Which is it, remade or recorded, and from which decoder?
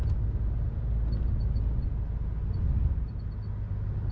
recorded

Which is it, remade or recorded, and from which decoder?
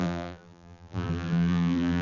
remade, vocoder, BigVGAN v2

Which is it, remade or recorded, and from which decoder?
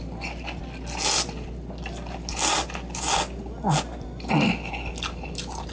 recorded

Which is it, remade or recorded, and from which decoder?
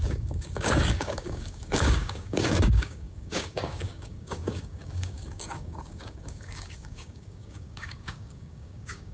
remade, codec, DAC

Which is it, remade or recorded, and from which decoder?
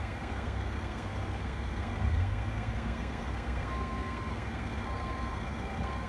remade, codec, SNAC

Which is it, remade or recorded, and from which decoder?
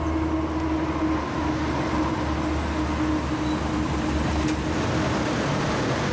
recorded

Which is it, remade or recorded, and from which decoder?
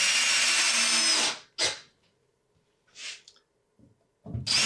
recorded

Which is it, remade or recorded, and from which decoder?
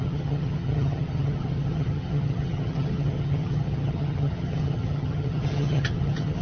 remade, vocoder, HiFi-GAN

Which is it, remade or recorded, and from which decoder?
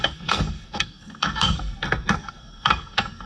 remade, codec, SNAC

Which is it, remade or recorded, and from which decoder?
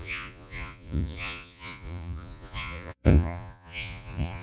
remade, vocoder, Vocos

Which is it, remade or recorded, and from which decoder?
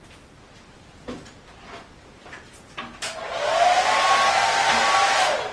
recorded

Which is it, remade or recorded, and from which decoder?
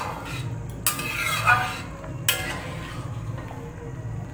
recorded